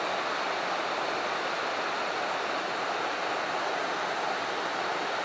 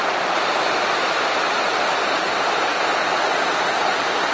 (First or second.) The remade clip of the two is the second